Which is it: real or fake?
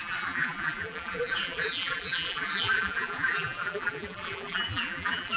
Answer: fake